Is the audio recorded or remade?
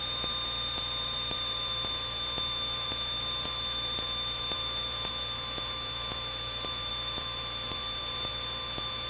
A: remade